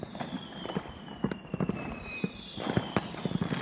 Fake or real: real